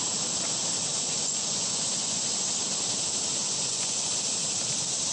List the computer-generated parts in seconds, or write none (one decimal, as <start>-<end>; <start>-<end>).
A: 0.9-2.2; 3.4-4.1